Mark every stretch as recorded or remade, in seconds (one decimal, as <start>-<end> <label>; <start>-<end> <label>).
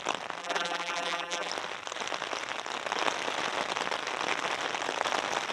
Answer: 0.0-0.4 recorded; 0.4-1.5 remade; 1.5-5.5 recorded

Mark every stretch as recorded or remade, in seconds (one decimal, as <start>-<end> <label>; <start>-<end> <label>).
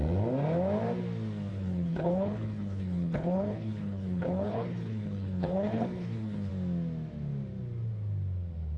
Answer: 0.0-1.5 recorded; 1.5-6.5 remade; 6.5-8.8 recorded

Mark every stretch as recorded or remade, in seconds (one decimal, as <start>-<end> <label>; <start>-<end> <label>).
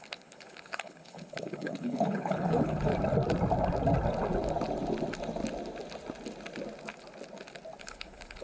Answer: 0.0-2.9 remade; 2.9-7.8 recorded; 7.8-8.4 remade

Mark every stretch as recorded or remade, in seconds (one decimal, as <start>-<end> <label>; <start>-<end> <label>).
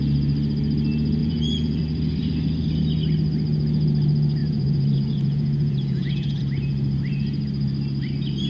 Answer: 0.0-1.2 recorded; 1.2-1.8 remade; 1.8-4.4 recorded; 4.4-6.4 remade; 6.4-8.5 recorded